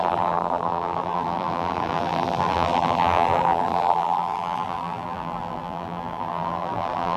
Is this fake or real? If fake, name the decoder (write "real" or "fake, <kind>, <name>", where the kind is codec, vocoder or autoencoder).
fake, vocoder, BigVGAN v2